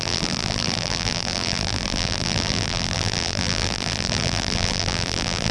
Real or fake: fake